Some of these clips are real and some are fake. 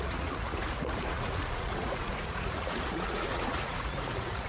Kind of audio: fake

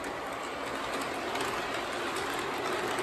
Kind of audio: real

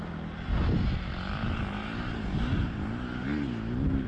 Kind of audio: real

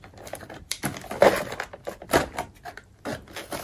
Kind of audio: real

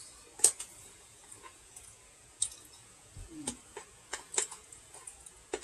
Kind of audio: fake